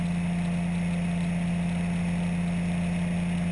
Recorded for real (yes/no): yes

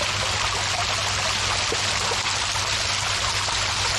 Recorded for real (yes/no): yes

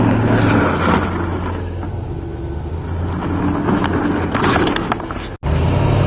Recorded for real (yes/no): yes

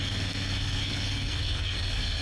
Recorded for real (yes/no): no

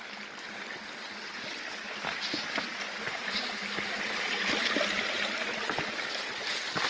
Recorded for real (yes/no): yes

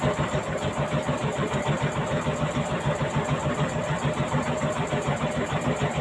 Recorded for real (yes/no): no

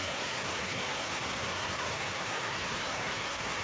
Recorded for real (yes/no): no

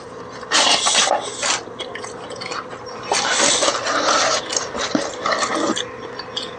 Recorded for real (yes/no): yes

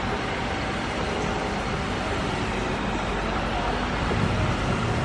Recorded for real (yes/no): yes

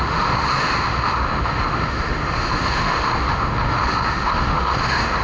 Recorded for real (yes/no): no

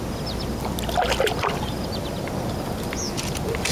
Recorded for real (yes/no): yes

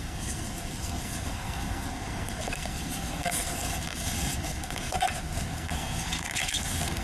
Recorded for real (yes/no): no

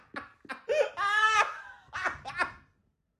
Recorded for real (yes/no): yes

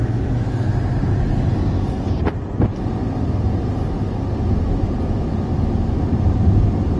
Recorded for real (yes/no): yes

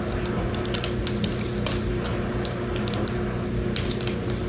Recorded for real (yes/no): yes